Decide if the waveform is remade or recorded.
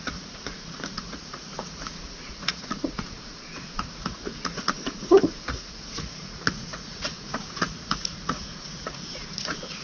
remade